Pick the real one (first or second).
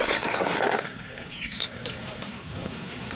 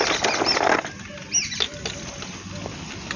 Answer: second